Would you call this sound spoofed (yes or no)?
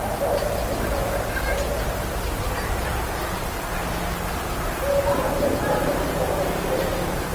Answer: no